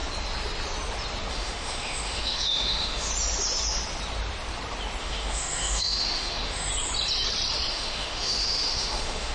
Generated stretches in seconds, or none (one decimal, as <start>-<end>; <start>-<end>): 1.3-3.1; 5.0-6.7; 7.7-9.3